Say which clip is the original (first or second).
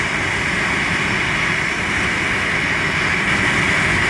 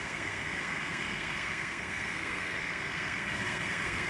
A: first